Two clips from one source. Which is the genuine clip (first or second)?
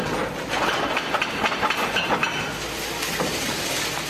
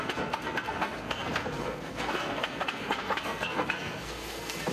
first